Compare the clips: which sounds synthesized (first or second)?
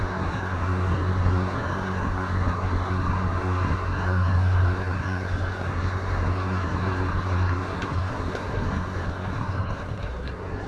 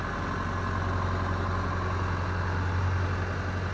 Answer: first